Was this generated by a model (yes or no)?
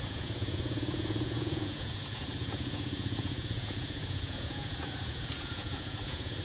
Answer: yes